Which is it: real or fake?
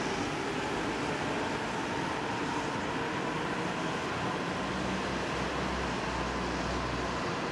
real